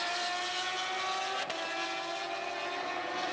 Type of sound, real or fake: real